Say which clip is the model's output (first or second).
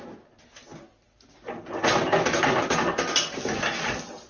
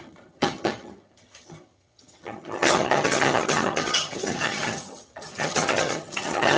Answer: second